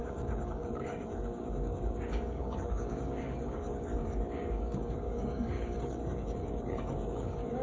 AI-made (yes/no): yes